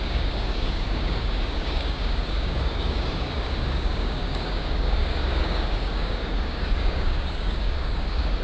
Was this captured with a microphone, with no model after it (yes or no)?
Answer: no